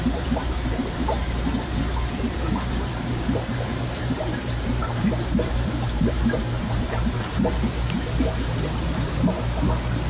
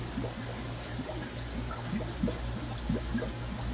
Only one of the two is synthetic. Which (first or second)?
first